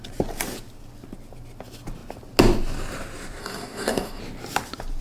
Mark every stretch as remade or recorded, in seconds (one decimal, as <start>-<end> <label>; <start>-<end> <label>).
0.0-3.4 recorded; 3.4-4.2 remade; 4.2-5.0 recorded